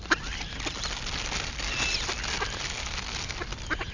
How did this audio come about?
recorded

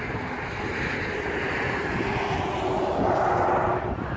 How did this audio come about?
recorded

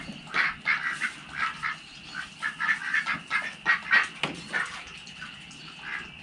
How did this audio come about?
recorded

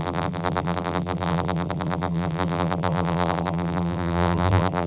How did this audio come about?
remade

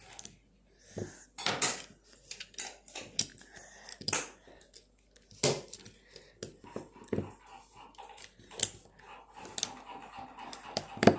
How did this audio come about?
recorded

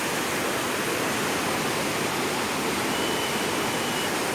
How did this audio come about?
remade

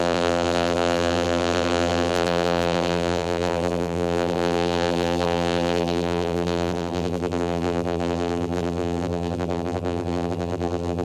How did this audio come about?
remade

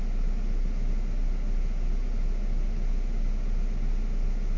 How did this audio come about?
recorded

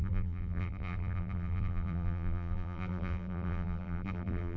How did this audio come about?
remade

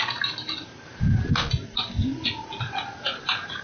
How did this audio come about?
remade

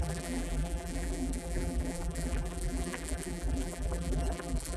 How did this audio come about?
remade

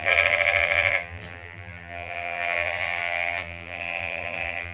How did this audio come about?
remade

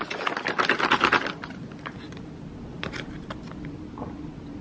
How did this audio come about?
recorded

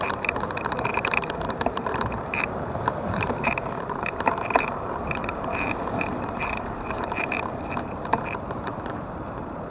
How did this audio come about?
remade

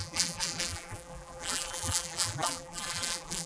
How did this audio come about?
remade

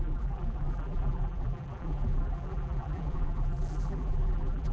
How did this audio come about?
remade